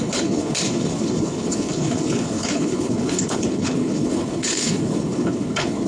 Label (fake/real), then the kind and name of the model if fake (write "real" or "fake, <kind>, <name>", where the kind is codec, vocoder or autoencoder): fake, codec, HILCodec